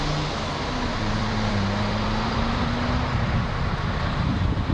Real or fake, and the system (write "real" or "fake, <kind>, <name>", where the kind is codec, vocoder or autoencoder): fake, vocoder, BigVGAN v2